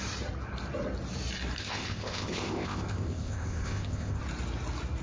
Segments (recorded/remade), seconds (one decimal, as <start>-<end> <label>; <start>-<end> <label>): 0.0-1.6 recorded; 1.6-4.2 remade; 4.2-5.0 recorded